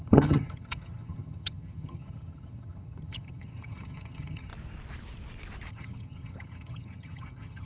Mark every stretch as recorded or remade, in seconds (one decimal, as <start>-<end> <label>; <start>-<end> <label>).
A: 0.0-4.5 remade; 4.5-5.7 recorded; 5.7-7.6 remade